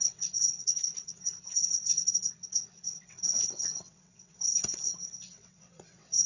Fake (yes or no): yes